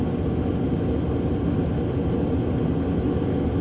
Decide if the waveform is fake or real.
real